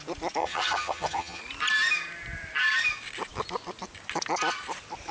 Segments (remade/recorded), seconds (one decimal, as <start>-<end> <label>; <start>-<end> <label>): 0.0-0.4 recorded; 0.4-1.4 remade; 1.4-5.1 recorded